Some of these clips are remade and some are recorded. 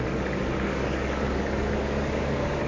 remade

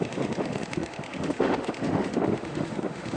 remade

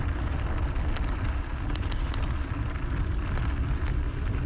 recorded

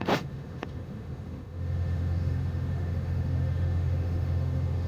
remade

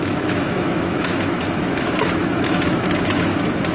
remade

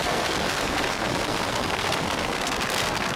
remade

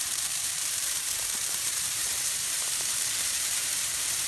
remade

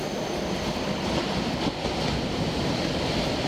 recorded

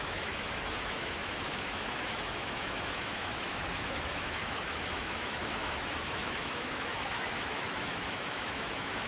remade